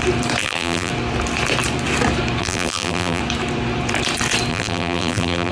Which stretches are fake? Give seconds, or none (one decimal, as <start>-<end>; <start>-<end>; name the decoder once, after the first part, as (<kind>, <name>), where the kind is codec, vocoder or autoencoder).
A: 0.4-0.9 (vocoder, BigVGAN v2); 2.4-3.2; 4.5-5.5